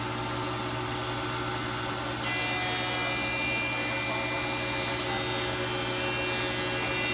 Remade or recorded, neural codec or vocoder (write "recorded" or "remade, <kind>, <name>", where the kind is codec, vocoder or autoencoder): recorded